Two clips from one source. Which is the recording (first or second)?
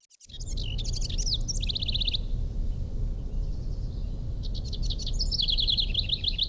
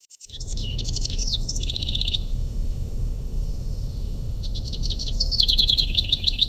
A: first